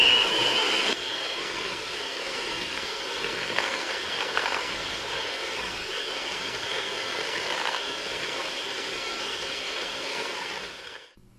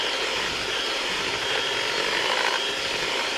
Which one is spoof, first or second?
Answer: first